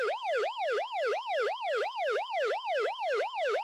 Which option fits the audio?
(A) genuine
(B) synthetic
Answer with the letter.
B